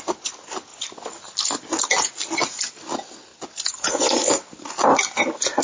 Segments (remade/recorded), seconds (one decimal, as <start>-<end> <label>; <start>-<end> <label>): 0.0-5.6 recorded